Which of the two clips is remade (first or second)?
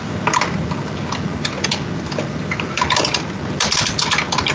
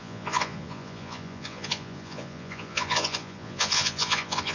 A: second